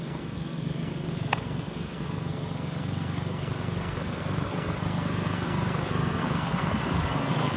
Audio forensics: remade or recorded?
remade